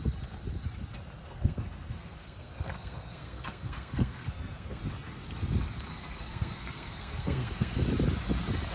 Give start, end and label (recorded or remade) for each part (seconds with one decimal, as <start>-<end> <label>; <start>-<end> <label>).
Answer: 0.0-1.2 recorded; 1.2-4.8 remade; 4.8-5.9 recorded; 5.9-7.8 remade; 7.8-8.7 recorded